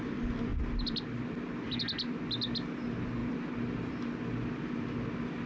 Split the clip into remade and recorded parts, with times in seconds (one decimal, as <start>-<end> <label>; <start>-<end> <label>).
0.0-0.5 recorded; 0.5-2.2 remade; 2.2-3.2 recorded; 3.2-4.2 remade; 4.2-5.5 recorded